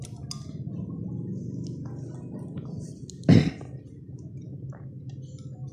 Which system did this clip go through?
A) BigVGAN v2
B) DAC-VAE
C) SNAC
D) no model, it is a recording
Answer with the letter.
D